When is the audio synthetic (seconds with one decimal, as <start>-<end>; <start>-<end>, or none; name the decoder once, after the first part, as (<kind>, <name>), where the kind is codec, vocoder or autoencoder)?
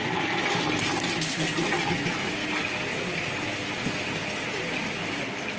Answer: none